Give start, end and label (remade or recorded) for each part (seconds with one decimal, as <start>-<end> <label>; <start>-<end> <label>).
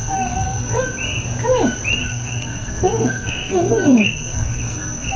0.0-0.8 remade; 0.8-2.0 recorded; 2.0-5.2 remade